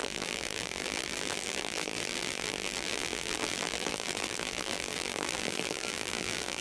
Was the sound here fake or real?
fake